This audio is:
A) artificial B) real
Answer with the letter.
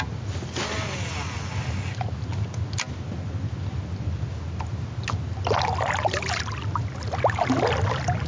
B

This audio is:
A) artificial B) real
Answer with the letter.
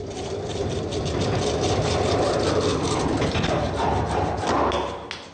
B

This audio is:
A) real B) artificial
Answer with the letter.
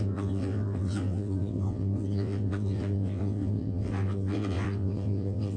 B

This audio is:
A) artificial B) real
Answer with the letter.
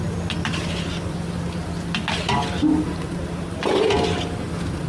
B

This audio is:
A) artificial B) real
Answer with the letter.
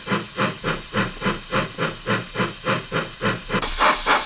B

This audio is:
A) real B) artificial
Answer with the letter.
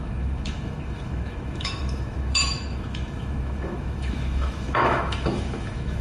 B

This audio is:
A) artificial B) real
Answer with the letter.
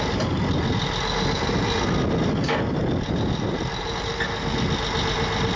B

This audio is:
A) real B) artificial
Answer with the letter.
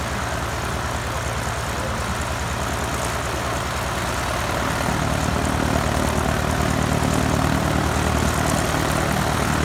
A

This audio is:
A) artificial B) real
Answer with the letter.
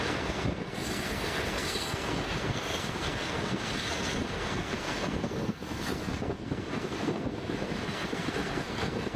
A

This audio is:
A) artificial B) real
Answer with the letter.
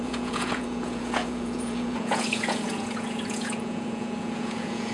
A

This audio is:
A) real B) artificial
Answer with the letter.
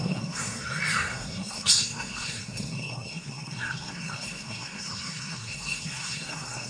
B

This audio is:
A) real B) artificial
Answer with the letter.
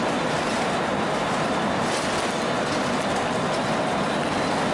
A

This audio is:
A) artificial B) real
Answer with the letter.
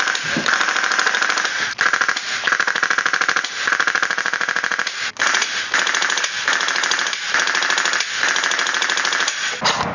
B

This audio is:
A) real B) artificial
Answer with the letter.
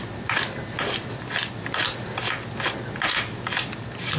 A